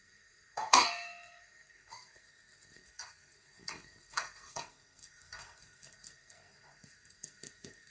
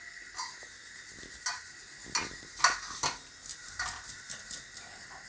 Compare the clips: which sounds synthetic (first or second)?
first